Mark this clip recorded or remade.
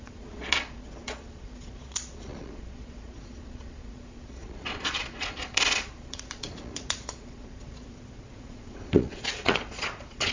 remade